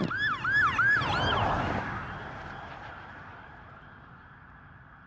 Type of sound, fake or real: real